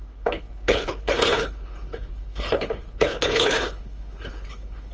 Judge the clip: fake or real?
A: fake